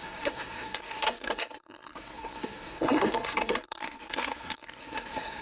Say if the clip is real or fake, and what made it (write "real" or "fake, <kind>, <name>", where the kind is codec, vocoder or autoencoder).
fake, codec, SNAC